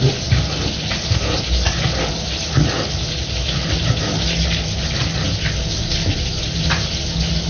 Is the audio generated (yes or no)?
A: no